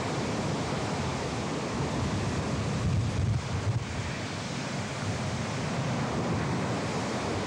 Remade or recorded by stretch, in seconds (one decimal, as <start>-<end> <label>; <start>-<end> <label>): 0.0-7.5 recorded